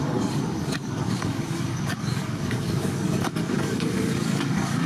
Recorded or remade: remade